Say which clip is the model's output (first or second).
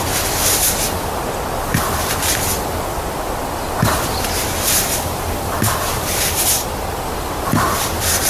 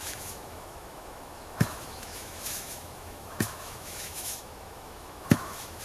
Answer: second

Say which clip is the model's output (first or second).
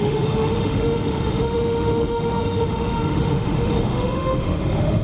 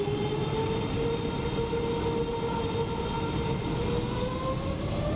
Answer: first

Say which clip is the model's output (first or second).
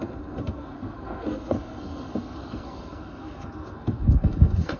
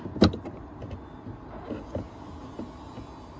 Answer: first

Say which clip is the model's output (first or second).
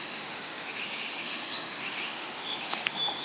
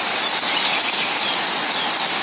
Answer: first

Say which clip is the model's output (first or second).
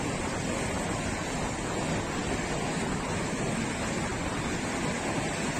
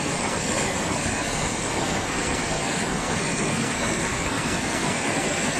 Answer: second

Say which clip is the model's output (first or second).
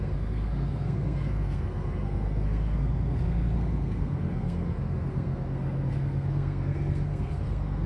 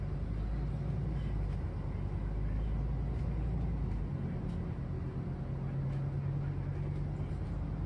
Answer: first